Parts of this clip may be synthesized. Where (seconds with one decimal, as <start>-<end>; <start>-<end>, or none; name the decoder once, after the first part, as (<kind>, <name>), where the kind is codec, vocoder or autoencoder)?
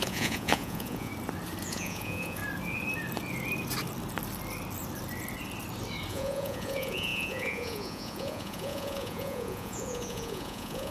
0.0-1.1 (vocoder, Vocos); 1.7-2.4; 6.1-10.9